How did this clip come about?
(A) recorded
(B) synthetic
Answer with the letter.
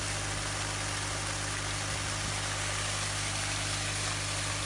A